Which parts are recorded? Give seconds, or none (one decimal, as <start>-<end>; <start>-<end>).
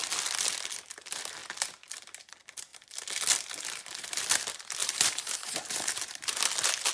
0.0-4.8; 6.4-6.9